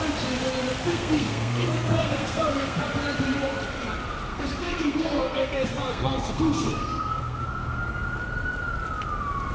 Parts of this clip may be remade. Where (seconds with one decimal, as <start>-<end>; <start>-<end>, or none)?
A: 0.9-2.8; 4.3-7.8